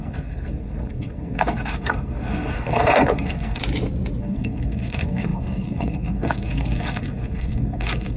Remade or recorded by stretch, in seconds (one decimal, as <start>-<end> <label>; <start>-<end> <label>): 0.0-3.6 remade; 3.6-4.2 recorded; 4.2-8.2 remade